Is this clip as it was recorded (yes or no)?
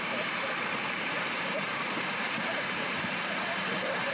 no